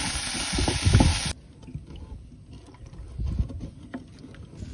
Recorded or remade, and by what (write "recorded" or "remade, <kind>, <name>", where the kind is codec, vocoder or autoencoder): recorded